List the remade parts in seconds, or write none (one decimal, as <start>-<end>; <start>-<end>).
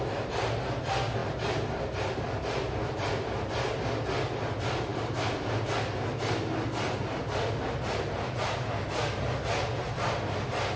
none